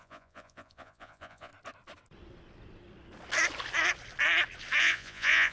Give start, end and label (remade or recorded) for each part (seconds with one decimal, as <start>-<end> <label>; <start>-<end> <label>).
0.0-1.5 remade; 1.5-4.8 recorded; 4.8-5.5 remade